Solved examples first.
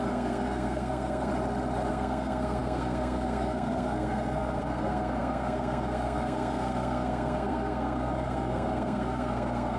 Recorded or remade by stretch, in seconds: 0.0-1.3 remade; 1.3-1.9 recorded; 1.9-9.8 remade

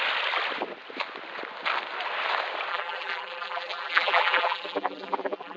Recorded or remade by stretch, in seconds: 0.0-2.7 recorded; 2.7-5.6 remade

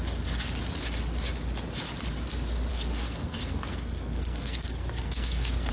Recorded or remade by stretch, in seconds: 0.0-2.7 recorded; 2.7-5.7 remade